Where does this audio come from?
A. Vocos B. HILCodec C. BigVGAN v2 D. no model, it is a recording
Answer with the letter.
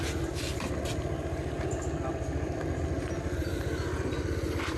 D